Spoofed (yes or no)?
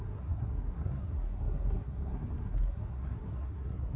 yes